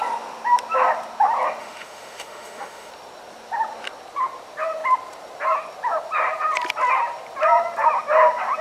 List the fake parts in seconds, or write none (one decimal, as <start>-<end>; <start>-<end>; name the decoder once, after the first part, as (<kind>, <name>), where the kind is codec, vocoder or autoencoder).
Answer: 1.6-2.9 (autoencoder, DAC-VAE)